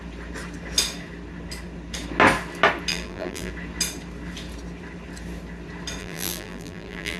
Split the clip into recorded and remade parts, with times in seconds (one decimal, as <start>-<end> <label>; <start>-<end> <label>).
0.0-2.9 recorded; 2.9-3.5 remade; 3.5-6.0 recorded; 6.0-7.2 remade